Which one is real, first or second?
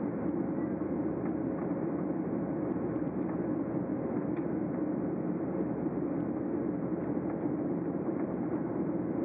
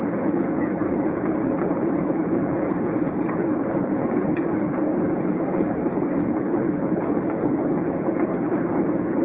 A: first